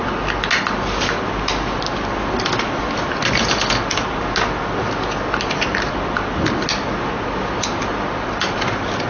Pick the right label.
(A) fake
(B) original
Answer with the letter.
B